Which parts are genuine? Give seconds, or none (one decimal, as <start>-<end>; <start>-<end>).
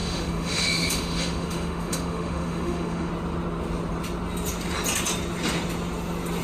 3.1-6.4